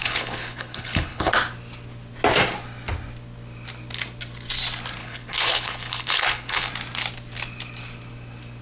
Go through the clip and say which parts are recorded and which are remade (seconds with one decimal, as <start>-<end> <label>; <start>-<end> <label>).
0.0-1.3 remade; 1.3-5.0 recorded; 5.0-6.7 remade; 6.7-8.6 recorded